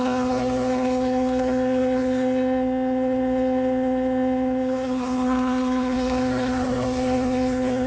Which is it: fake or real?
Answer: fake